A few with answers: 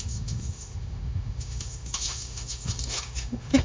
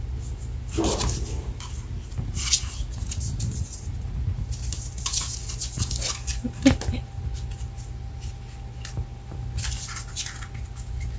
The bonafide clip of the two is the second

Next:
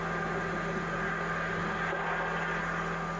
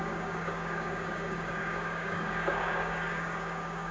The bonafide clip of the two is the first